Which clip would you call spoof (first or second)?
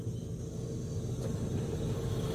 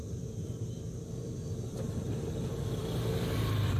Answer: second